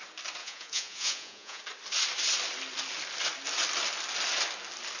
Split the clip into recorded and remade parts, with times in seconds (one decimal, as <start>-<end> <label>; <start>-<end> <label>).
0.0-0.4 recorded; 0.4-1.6 remade; 1.6-5.0 recorded